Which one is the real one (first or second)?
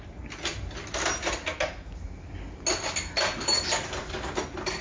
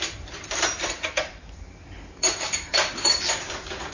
first